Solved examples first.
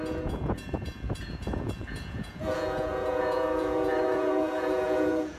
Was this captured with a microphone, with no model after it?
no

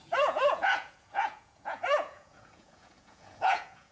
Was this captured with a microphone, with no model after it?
no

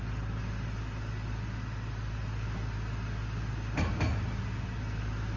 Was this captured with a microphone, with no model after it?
yes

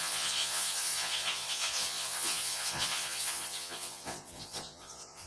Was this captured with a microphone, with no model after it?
no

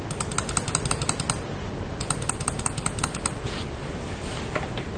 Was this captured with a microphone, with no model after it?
yes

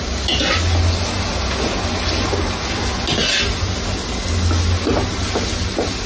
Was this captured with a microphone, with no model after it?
yes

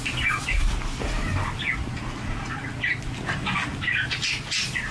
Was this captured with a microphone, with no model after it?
yes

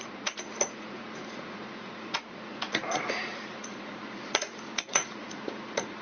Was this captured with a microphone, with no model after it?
no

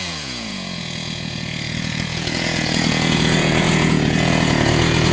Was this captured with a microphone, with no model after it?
no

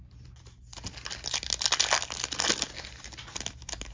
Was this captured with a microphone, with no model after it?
yes